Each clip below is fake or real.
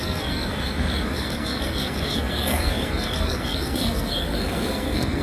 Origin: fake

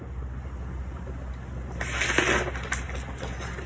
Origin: real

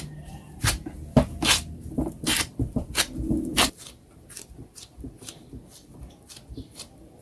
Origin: fake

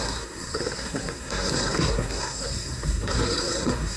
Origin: fake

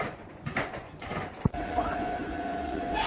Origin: fake